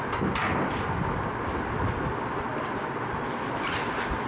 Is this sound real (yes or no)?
yes